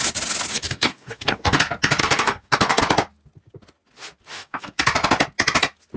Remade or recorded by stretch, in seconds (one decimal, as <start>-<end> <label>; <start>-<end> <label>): 0.0-0.5 recorded; 0.5-1.6 remade; 1.6-2.0 recorded; 2.0-2.8 remade; 2.8-4.3 recorded; 4.3-4.8 remade; 4.8-6.0 recorded